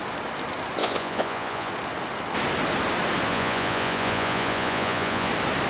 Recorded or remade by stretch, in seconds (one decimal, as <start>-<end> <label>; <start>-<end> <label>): 0.0-0.8 recorded; 0.8-1.7 remade; 1.7-3.3 recorded; 3.3-5.3 remade; 5.3-5.7 recorded